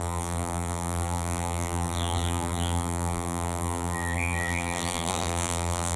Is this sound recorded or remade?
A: remade